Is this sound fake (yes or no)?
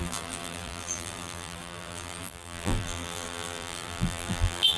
yes